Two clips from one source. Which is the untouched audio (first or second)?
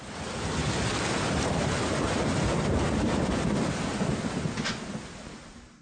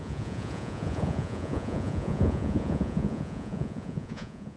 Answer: first